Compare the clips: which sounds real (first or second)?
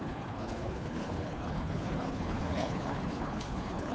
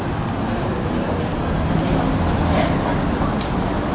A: second